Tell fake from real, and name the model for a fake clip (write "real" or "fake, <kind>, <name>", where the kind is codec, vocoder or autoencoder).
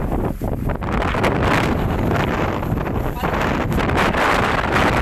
real